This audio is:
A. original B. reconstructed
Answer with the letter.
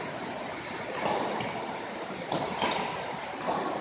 A